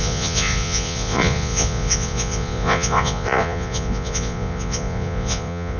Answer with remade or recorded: remade